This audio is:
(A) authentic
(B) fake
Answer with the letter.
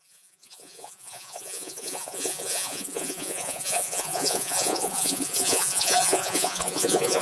B